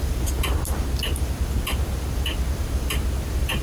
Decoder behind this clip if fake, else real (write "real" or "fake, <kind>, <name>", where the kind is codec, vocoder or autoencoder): real